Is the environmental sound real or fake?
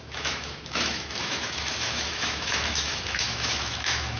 fake